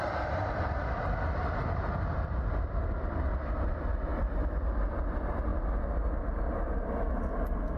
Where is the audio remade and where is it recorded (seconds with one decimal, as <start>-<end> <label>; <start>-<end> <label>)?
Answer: 0.0-7.8 recorded